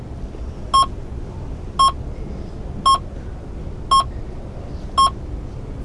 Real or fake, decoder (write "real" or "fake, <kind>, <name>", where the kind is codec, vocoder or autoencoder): real